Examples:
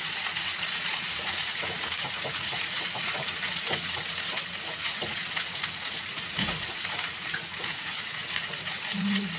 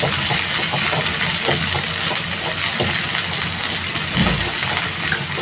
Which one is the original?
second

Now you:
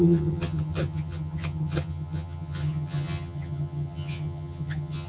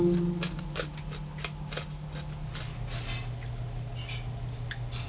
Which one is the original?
second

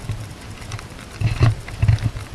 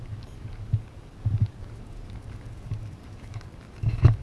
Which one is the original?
first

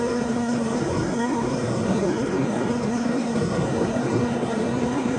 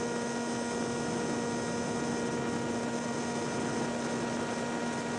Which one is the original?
second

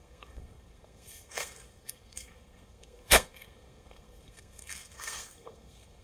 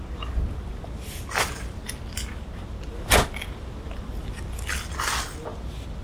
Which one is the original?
second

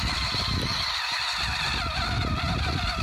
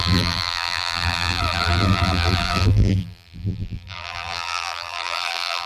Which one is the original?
first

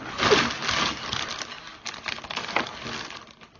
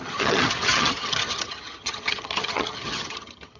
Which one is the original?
first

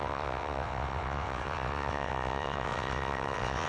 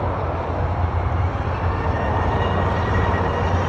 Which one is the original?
second